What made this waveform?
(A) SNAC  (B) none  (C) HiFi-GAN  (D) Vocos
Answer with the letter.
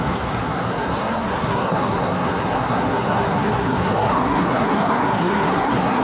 A